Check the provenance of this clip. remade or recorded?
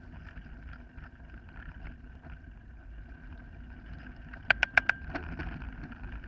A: recorded